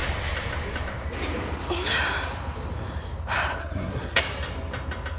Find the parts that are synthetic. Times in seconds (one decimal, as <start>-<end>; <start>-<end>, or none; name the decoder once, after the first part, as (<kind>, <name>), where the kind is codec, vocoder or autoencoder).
3.6-4.2 (codec, SNAC)